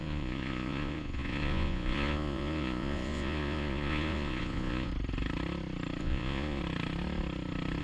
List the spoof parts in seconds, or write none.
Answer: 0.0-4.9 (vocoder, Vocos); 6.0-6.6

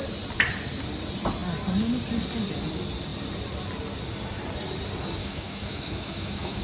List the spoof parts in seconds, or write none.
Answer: 5.2-6.6 (autoencoder, DAC-VAE)

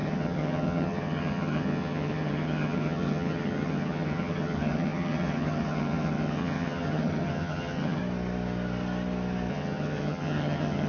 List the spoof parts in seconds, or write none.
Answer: 0.0-8.0 (vocoder, HiFi-GAN); 9.5-10.9

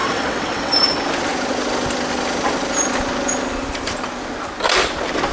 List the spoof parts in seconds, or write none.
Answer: 0.0-0.7 (vocoder, WaveNeXt)

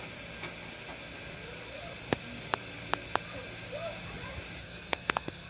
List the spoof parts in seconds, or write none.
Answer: 4.6-5.5 (codec, SNAC)